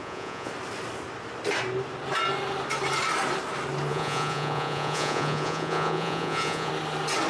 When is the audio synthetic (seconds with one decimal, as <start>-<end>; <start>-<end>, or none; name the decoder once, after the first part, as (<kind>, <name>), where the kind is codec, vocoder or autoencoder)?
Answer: 0.0-0.5 (vocoder, Vocos); 3.9-6.7